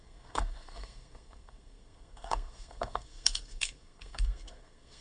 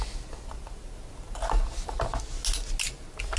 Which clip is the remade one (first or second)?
first